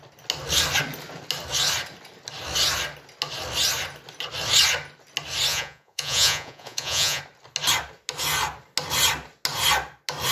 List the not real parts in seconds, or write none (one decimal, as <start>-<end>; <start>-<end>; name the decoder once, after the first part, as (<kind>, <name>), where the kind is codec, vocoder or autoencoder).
5.5-7.2 (vocoder, Vocos)